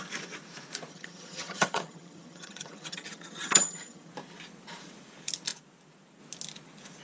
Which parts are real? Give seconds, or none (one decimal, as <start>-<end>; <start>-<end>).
0.0-0.9; 4.1-7.0